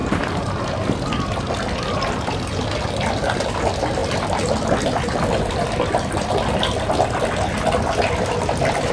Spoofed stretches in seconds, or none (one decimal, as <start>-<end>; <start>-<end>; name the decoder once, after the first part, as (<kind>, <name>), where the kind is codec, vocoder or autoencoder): 0.0-0.6 (vocoder, BigVGAN v2)